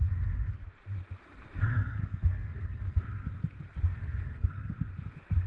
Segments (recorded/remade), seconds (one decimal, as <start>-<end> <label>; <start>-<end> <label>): 0.0-1.7 recorded; 1.7-3.0 remade; 3.0-4.0 recorded; 4.0-4.7 remade; 4.7-5.5 recorded